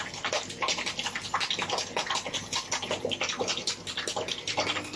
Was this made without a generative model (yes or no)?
yes